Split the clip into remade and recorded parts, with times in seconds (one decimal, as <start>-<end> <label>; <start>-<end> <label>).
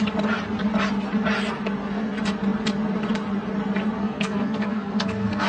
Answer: 0.0-4.0 recorded; 4.0-5.5 remade